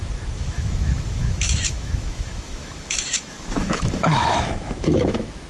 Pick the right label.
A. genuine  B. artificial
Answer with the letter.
B